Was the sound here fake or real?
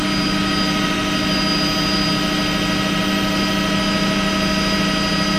real